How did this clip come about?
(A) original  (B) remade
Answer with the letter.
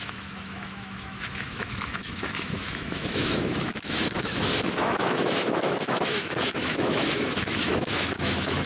B